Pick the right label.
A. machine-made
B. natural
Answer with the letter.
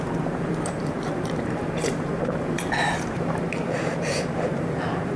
A